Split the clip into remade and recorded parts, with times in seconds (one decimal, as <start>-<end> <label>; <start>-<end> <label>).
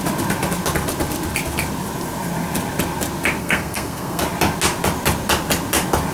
0.0-3.4 recorded; 3.4-4.2 remade; 4.2-6.1 recorded